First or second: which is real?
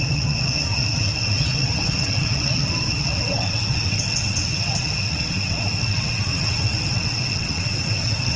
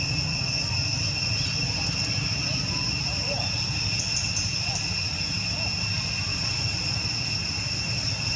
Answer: second